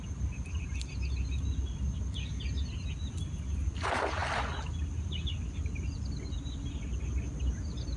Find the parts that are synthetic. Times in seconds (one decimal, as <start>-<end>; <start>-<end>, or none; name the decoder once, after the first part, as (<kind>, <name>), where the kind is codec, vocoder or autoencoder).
none